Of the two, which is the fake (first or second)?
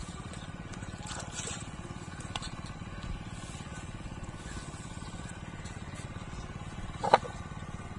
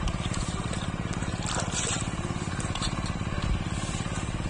first